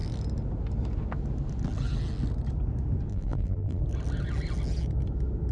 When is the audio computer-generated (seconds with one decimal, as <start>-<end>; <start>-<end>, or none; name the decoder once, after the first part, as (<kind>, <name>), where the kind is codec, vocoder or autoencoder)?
3.1-3.8 (vocoder, BigVGAN v2)

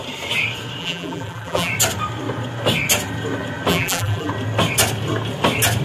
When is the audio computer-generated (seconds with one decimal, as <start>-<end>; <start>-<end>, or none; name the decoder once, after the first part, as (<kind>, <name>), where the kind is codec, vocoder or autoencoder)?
0.8-1.7 (vocoder, BigVGAN v2); 3.7-4.3